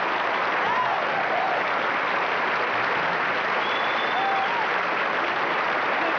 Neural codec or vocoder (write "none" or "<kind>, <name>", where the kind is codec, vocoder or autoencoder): none